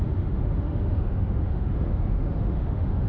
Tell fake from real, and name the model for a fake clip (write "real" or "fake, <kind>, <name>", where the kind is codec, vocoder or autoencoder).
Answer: fake, autoencoder, DAC-VAE